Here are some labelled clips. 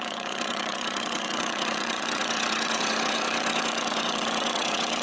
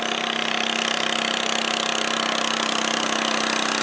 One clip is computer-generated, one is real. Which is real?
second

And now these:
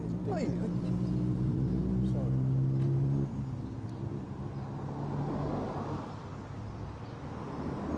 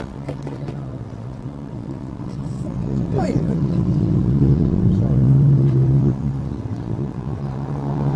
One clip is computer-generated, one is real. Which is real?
first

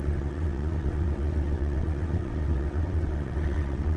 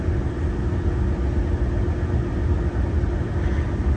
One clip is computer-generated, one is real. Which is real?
second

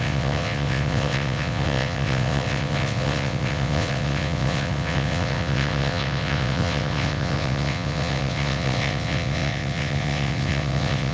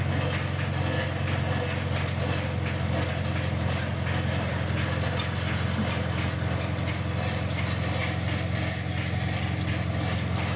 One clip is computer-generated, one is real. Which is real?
second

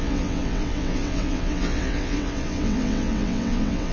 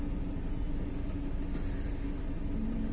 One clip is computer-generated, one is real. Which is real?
second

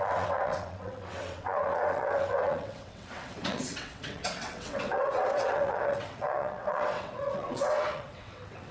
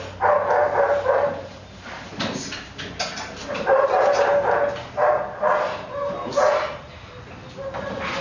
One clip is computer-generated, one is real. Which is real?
second